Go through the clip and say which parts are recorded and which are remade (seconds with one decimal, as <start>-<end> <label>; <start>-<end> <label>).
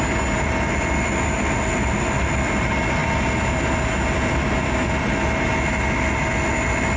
0.0-7.0 recorded